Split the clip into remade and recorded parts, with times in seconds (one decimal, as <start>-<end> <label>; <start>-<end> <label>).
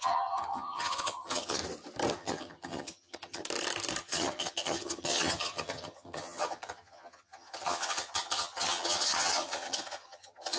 0.0-1.6 remade; 1.6-2.1 recorded; 2.1-3.4 remade; 3.4-4.0 recorded; 4.0-10.6 remade